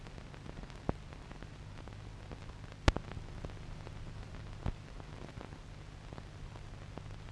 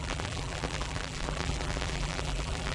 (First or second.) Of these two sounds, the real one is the first